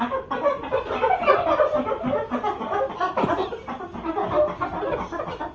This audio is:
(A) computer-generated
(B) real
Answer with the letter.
B